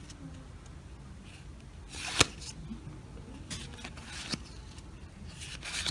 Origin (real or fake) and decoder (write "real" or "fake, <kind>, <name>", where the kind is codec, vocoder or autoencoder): real